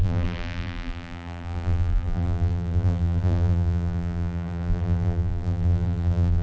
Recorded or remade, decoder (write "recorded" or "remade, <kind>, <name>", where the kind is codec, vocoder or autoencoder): remade, vocoder, BigVGAN v2